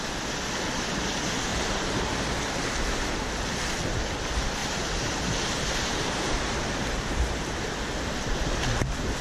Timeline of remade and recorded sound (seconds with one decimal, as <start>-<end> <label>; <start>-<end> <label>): 0.0-1.5 recorded; 1.5-2.0 remade; 2.0-4.6 recorded; 4.6-5.1 remade; 5.1-9.2 recorded